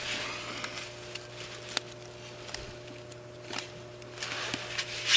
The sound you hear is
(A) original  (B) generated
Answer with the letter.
A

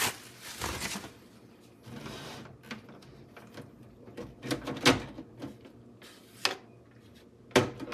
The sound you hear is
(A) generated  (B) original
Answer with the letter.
B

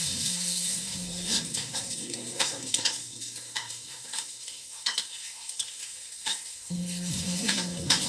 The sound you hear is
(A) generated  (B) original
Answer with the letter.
A